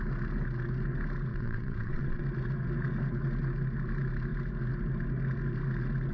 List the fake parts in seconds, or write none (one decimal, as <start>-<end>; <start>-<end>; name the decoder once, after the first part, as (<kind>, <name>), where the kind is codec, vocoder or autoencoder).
1.3-2.2 (vocoder, WaveNeXt)